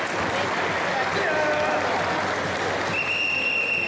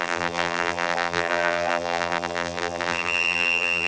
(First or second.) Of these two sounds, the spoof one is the second